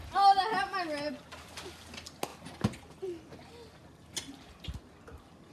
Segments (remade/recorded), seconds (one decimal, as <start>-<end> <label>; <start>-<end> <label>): 0.0-5.5 recorded